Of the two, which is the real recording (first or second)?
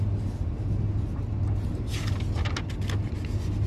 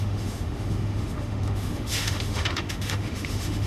first